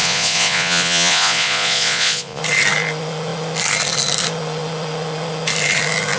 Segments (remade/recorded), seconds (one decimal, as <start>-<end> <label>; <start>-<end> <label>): 0.0-2.4 remade; 2.4-6.2 recorded

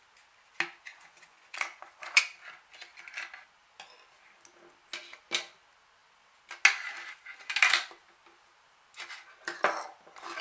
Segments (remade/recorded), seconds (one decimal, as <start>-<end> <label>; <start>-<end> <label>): 0.0-0.9 recorded; 0.9-2.2 remade; 2.2-10.4 recorded

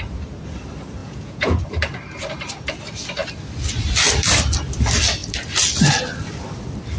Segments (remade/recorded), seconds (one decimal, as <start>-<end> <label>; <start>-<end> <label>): 0.0-1.0 recorded; 1.0-1.6 remade; 1.6-7.0 recorded